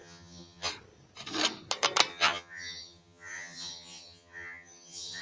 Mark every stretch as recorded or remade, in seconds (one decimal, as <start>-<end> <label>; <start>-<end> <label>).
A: 0.0-0.7 remade; 0.7-2.1 recorded; 2.1-5.2 remade